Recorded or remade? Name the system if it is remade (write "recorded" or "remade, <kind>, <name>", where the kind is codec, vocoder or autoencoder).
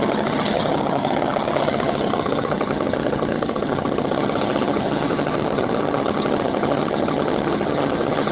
remade, vocoder, HiFi-GAN